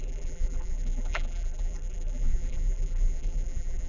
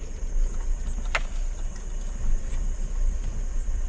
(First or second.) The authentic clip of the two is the second